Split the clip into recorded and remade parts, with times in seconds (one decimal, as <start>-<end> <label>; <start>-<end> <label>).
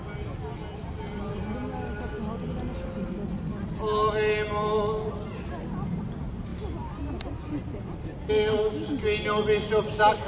0.0-10.3 recorded